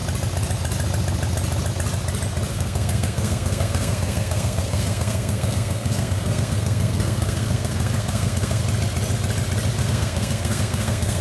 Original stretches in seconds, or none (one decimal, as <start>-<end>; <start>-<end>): 0.0-2.5; 8.6-9.8